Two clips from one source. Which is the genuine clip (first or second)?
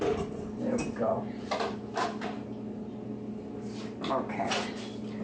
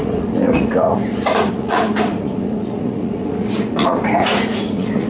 first